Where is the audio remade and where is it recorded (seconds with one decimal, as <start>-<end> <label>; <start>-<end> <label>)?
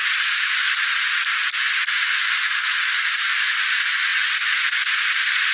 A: 0.0-0.7 remade; 0.7-5.5 recorded